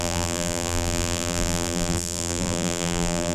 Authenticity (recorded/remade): remade